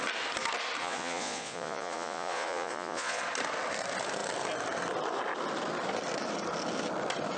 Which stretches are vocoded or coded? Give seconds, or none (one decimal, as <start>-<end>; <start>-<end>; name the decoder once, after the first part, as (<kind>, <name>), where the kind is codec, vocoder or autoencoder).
0.8-3.2 (vocoder, Vocos)